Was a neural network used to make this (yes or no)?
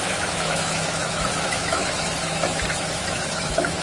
yes